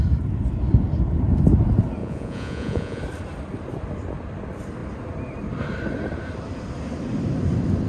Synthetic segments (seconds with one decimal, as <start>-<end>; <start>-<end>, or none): 2.0-3.0